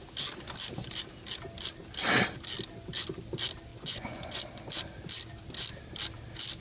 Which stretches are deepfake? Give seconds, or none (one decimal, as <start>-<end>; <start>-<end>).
3.7-4.4